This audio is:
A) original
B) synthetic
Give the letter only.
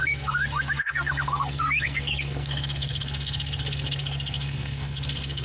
B